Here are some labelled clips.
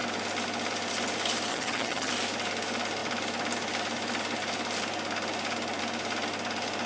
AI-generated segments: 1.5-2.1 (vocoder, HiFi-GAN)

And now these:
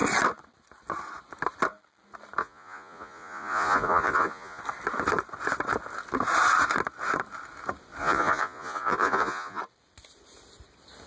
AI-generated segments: 2.4-4.6 (vocoder, Vocos); 8.0-9.6